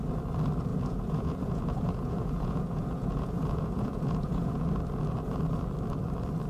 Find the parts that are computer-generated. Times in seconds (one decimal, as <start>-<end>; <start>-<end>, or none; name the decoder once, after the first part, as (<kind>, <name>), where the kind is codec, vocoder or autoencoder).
0.7-4.6 (vocoder, Vocos)